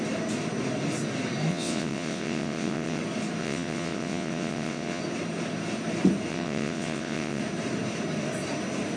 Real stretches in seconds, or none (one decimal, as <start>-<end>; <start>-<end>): 0.0-1.5; 3.0-3.4; 5.0-6.3; 7.4-9.0